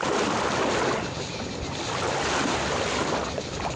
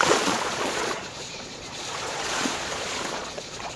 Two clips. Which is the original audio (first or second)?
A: first